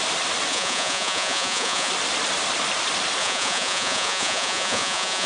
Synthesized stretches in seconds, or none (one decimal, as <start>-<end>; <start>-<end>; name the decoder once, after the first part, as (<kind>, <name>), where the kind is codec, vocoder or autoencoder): 0.5-1.9 (vocoder, Vocos); 3.2-5.3